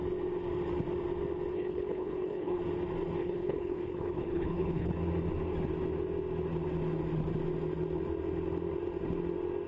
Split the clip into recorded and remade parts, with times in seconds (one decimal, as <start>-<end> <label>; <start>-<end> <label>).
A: 0.0-1.5 recorded; 1.5-2.6 remade; 2.6-3.2 recorded; 3.2-4.9 remade; 4.9-9.7 recorded